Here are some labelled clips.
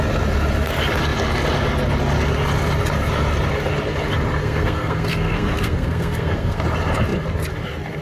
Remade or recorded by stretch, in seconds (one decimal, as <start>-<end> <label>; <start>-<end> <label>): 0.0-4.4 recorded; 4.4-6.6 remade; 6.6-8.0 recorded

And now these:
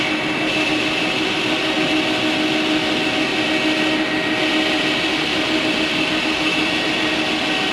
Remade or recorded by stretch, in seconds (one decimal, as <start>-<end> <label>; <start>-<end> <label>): 0.0-7.7 recorded

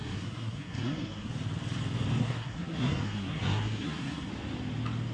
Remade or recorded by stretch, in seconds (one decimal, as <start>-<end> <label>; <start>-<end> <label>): 0.0-1.3 remade; 1.3-2.2 recorded; 2.2-4.3 remade; 4.3-5.1 recorded

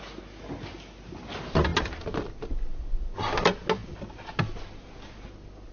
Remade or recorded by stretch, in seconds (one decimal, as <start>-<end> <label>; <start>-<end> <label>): 0.0-5.7 recorded

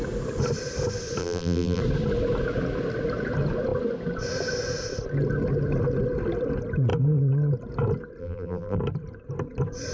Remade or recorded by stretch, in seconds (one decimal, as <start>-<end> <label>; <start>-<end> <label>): 0.0-1.2 recorded; 1.2-1.8 remade; 1.8-8.2 recorded; 8.2-8.8 remade; 8.8-9.9 recorded